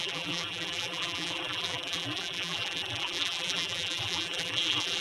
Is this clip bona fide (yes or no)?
no